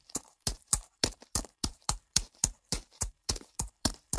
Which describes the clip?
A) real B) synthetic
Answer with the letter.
B